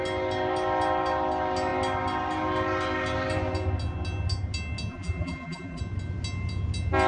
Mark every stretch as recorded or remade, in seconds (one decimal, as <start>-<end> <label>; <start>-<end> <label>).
0.0-4.9 recorded; 4.9-5.8 remade; 5.8-7.1 recorded